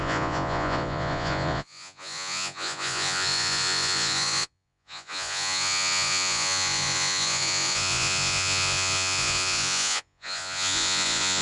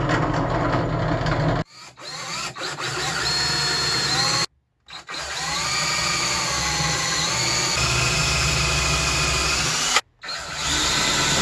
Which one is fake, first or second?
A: first